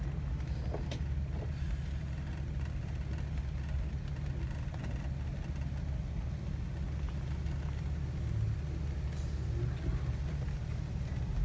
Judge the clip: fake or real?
real